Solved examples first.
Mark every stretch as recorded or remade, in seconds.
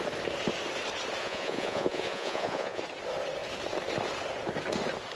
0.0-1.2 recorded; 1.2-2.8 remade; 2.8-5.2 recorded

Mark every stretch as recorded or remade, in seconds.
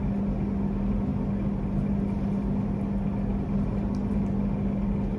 0.0-5.2 recorded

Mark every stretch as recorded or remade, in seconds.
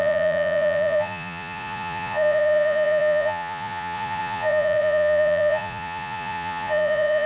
0.0-7.3 remade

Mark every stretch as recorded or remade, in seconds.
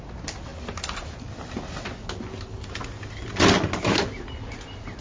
0.0-5.0 recorded